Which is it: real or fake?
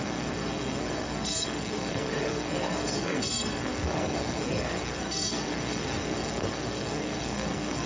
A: fake